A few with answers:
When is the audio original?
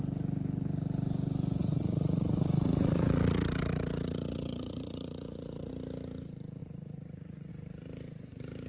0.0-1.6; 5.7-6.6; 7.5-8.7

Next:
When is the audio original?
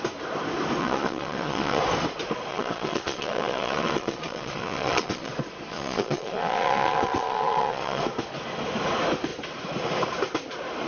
0.0-0.8; 1.8-2.5; 5.3-5.7; 8.0-10.9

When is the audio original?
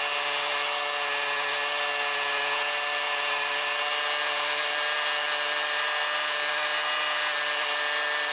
0.0-8.3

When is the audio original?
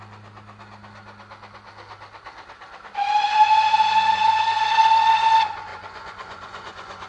0.0-5.7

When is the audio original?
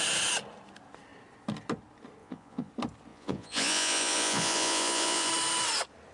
0.0-2.2; 2.7-3.1; 5.3-6.1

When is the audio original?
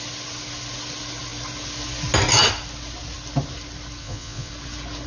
0.0-4.0; 4.5-5.1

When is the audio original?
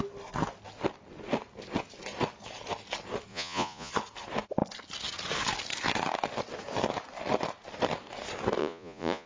0.0-3.3; 3.9-8.6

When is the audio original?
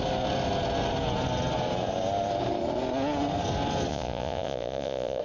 0.0-3.9